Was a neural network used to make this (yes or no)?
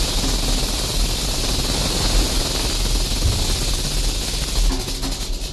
no